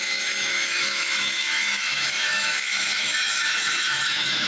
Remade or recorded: remade